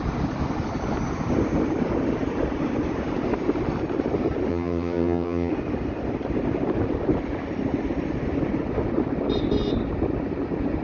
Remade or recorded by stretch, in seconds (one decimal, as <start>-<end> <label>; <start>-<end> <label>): 0.0-4.5 recorded; 4.5-5.5 remade; 5.5-10.8 recorded